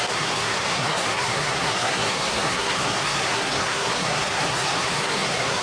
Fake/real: fake